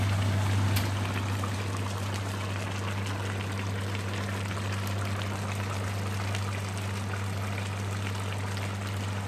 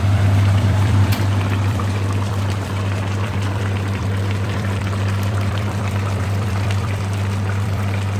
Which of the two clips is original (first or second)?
first